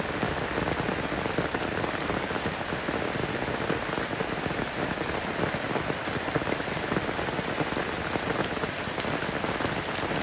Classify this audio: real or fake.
real